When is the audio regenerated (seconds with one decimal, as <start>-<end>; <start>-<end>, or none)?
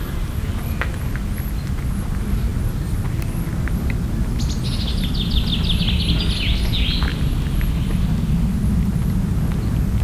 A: none